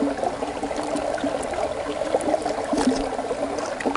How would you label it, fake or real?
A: real